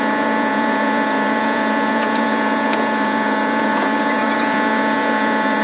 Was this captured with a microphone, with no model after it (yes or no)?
no